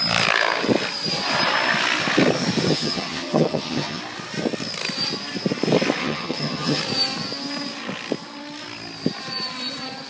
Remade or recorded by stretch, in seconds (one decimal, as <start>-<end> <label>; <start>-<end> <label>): 0.0-2.7 recorded; 2.7-4.0 remade; 4.0-6.0 recorded; 6.0-6.8 remade; 6.8-10.1 recorded